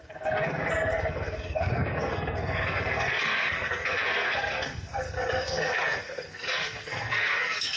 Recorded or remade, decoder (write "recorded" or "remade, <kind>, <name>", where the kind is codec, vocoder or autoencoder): remade, codec, SNAC